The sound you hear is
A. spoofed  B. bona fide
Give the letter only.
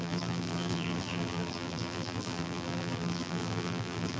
A